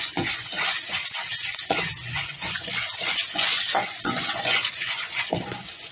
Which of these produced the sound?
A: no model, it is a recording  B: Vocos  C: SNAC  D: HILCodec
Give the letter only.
B